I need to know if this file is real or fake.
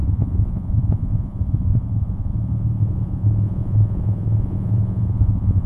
fake